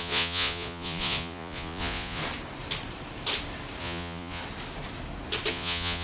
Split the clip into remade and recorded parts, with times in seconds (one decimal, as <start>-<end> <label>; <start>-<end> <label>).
0.0-2.2 remade; 2.2-3.8 recorded; 3.8-4.4 remade; 4.4-5.5 recorded; 5.5-6.0 remade